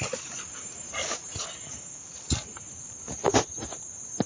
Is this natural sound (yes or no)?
yes